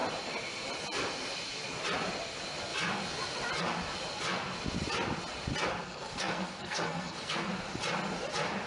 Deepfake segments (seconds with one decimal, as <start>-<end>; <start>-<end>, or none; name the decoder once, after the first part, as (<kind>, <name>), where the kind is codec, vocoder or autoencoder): 5.8-7.5 (codec, SNAC)